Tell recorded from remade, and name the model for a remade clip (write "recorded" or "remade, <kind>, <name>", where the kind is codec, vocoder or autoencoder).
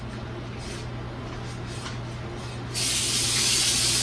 recorded